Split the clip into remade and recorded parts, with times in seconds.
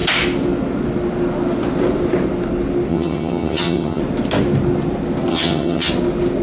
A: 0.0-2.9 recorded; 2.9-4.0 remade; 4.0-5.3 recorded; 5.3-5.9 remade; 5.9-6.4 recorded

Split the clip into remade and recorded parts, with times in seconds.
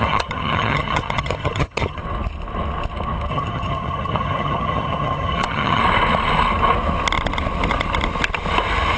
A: 0.0-2.0 remade; 2.0-3.3 recorded; 3.3-5.8 remade; 5.8-9.0 recorded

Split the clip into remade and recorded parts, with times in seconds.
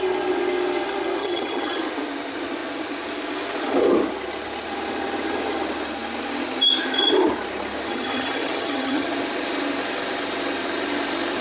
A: 0.0-1.2 recorded; 1.2-1.8 remade; 1.8-7.9 recorded; 7.9-9.1 remade; 9.1-11.4 recorded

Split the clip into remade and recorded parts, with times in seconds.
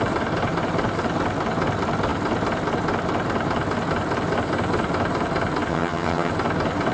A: 0.0-5.7 recorded; 5.7-6.3 remade; 6.3-6.9 recorded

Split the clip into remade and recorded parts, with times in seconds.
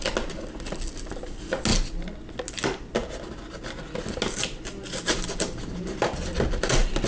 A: 0.0-7.1 recorded